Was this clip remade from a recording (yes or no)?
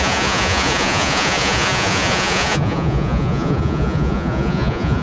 yes